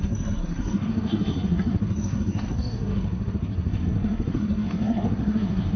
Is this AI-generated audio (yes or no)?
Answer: yes